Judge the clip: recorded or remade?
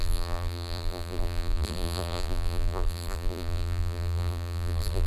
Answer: remade